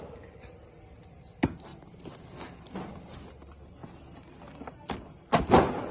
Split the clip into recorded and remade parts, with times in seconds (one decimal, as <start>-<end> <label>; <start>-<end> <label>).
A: 0.0-5.9 recorded